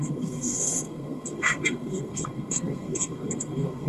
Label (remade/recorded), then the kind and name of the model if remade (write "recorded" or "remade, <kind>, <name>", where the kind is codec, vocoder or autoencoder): remade, codec, SNAC